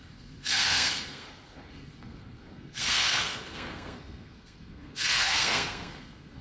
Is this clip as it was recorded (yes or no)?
no